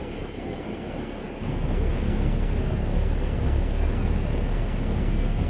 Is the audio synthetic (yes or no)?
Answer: yes